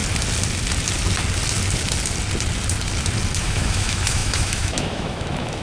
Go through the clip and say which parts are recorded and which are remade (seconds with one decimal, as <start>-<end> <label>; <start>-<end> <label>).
0.0-3.4 recorded; 3.4-5.6 remade